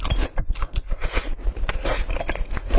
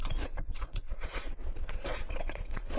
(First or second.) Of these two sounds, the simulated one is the second